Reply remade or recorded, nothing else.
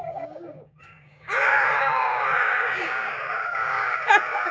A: remade